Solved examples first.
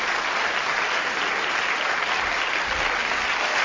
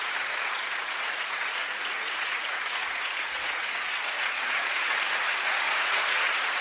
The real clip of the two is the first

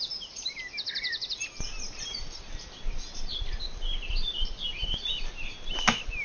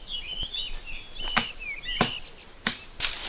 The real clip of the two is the second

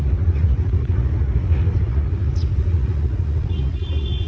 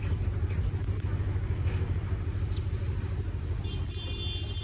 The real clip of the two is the second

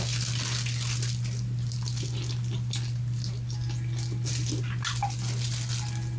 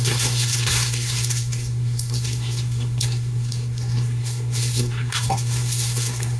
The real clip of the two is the first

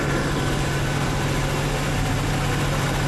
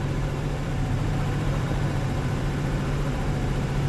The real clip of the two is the first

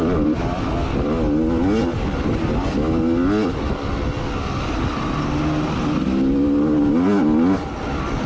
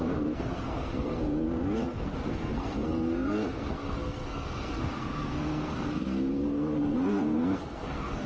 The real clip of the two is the first